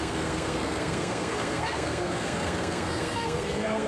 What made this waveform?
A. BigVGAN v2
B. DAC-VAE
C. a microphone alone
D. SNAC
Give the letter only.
D